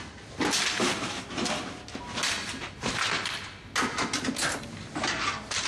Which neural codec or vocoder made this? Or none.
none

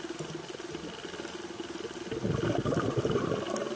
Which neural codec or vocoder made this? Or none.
none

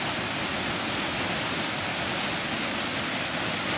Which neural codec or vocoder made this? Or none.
none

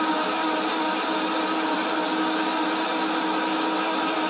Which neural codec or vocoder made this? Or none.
none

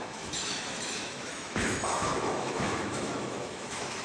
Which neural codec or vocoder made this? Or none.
autoencoder, DAC-VAE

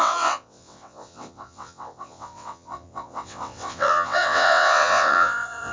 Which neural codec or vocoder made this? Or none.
vocoder, WaveNeXt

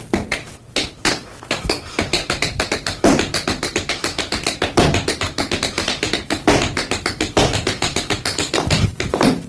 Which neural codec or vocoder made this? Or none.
none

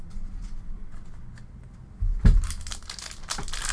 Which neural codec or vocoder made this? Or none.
none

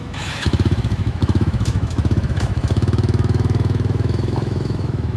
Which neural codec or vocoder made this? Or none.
autoencoder, DAC-VAE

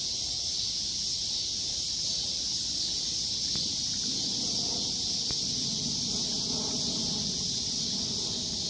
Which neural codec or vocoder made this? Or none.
none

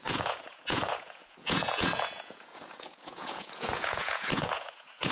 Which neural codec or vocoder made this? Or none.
vocoder, Vocos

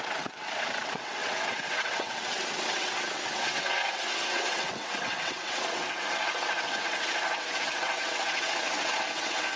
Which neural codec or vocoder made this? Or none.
vocoder, WaveNeXt